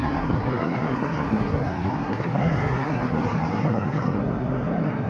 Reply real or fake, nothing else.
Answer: fake